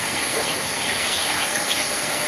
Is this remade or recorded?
remade